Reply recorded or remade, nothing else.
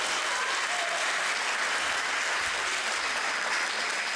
recorded